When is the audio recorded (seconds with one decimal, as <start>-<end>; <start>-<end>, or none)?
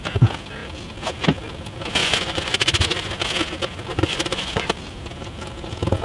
0.0-2.0; 3.1-3.9; 4.7-6.0